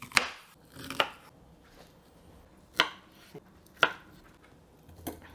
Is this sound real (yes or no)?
yes